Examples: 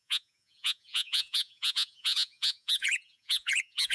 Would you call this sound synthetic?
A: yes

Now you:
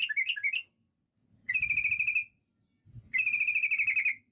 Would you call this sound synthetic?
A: no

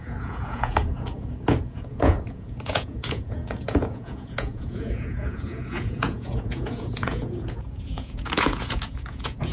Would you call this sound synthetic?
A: yes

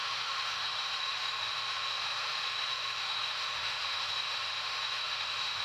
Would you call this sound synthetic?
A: yes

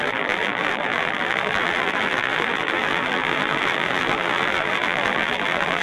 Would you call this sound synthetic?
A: yes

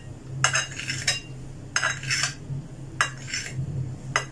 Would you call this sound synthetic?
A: no